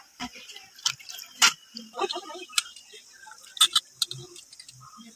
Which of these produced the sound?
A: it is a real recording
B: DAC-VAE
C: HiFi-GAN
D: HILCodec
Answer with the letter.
A